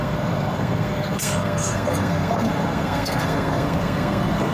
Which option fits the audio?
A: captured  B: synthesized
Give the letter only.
B